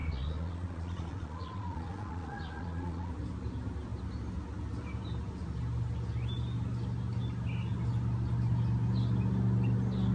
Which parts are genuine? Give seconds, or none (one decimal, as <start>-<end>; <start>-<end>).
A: 3.1-10.1